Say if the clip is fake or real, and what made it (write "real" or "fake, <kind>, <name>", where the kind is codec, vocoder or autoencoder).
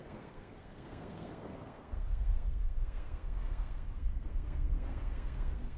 fake, codec, SNAC